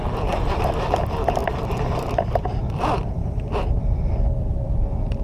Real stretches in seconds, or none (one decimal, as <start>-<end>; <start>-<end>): none